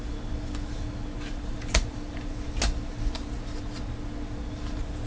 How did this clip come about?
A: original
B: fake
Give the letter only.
A